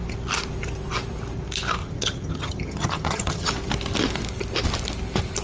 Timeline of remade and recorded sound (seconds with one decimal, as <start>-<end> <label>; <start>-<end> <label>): 0.0-1.8 recorded; 1.8-3.5 remade; 3.5-5.4 recorded